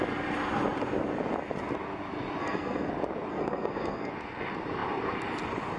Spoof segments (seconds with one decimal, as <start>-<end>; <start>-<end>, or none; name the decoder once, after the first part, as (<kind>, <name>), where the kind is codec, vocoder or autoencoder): 2.4-2.9 (codec, SNAC); 3.3-4.1